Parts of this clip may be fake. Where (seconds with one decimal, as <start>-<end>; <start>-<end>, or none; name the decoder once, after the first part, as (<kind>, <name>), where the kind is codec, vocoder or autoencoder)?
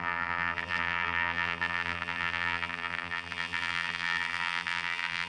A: 0.0-5.3 (vocoder, BigVGAN v2)